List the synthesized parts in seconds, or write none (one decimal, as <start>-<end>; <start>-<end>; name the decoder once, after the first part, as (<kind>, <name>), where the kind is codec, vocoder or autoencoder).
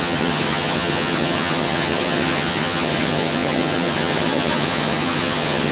0.0-5.7 (vocoder, HiFi-GAN)